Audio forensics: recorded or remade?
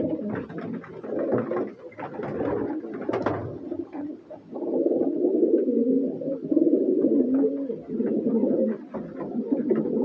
recorded